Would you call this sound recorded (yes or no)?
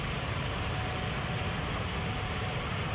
yes